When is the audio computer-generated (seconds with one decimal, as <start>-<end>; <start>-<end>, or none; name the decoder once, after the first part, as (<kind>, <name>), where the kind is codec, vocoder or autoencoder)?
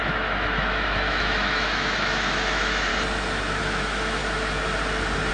0.0-2.9 (autoencoder, DAC-VAE); 3.6-4.2